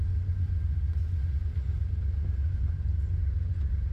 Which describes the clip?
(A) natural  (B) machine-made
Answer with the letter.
A